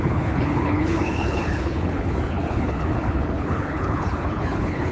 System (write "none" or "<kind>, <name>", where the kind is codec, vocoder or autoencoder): codec, HILCodec